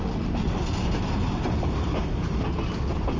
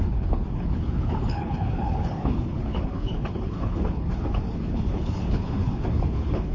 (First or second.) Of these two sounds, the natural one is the first